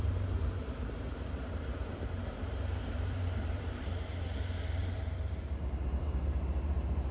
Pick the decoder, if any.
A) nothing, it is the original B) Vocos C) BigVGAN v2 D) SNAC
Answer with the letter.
C